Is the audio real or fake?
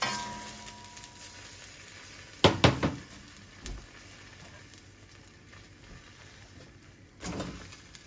real